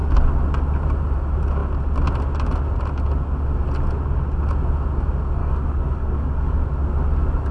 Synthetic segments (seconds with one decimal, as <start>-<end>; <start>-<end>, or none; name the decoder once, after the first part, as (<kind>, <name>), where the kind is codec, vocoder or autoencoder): 5.4-6.7 (codec, DAC)